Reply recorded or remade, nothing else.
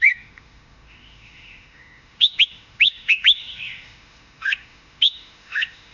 remade